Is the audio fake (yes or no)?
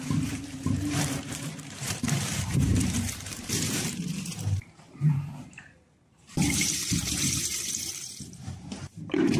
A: yes